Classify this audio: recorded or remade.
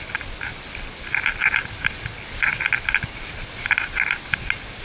recorded